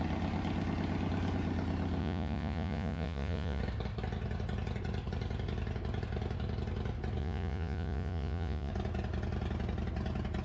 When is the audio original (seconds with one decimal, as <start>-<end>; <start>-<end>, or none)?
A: 0.0-2.0; 3.6-7.2; 8.7-10.4